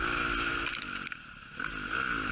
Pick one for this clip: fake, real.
real